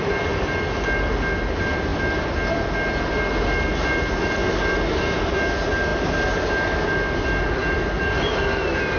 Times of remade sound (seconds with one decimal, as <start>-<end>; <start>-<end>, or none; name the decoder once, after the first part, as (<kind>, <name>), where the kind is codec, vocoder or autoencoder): none

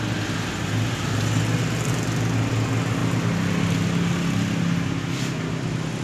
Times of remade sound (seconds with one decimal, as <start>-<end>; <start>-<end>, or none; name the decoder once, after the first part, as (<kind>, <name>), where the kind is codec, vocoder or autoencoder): none

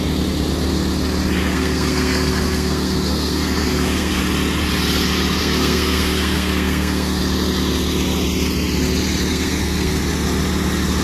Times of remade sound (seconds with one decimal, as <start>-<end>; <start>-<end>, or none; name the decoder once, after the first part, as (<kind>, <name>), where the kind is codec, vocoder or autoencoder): 1.4-4.2 (codec, SNAC); 5.4-7.2; 9.3-10.0